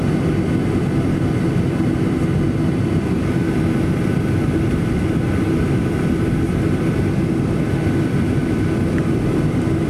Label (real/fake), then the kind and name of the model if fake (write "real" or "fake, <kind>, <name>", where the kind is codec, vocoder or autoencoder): real